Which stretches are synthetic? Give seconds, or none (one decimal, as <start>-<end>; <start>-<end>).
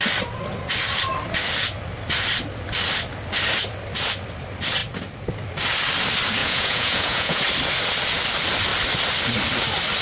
6.4-7.4